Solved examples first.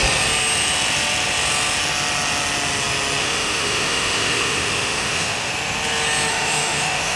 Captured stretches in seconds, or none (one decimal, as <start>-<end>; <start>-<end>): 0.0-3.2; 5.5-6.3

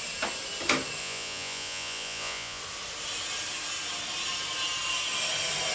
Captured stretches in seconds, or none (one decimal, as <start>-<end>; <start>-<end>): 0.0-1.0; 2.6-5.7

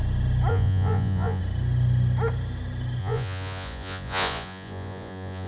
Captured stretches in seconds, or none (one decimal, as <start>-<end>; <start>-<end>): 0.0-0.5; 1.4-3.0

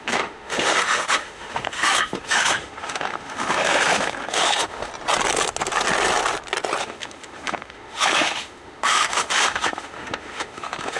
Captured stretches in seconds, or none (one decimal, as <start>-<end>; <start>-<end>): 4.9-6.8

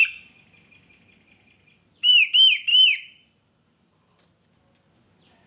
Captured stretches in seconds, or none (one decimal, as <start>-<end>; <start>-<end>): 0.0-5.5

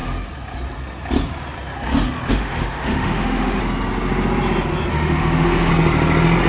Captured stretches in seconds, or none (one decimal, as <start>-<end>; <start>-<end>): 0.0-2.3; 3.6-4.9; 5.7-6.5